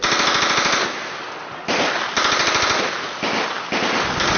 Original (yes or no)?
yes